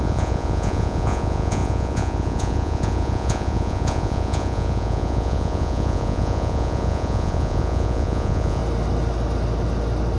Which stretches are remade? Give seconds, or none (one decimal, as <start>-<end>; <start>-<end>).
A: 0.0-8.6